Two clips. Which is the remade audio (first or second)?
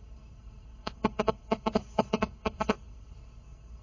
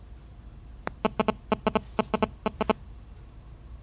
first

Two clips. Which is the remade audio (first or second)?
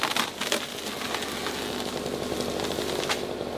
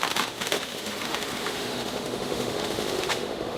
second